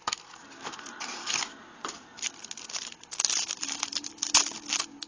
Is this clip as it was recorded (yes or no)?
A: yes